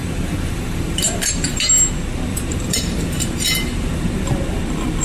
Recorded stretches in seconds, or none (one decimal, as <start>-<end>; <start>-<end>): 1.7-2.3; 4.2-5.0